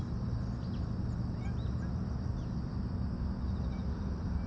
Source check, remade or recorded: recorded